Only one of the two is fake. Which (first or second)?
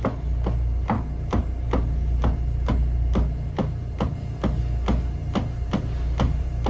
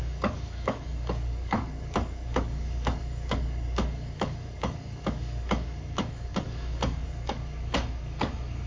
second